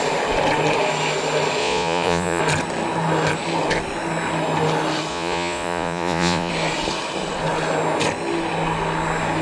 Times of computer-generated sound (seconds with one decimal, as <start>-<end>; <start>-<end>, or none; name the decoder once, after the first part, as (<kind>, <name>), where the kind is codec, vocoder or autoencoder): 1.6-2.4 (vocoder, Vocos); 5.1-6.5